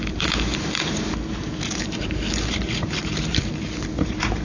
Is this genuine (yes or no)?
no